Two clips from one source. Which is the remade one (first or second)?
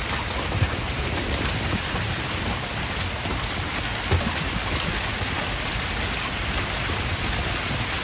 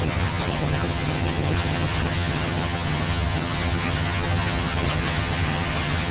second